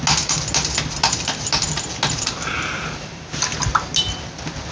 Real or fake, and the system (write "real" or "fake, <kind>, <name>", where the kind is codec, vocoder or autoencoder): real